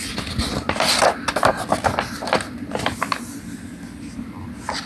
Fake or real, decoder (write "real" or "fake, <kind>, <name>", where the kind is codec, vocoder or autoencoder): real